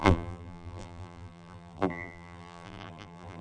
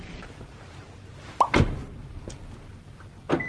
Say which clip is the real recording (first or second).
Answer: second